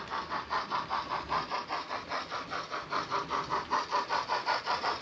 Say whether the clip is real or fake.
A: real